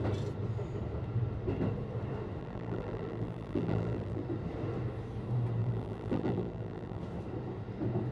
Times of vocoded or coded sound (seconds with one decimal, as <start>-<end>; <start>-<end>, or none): 2.4-4.2; 5.6-7.0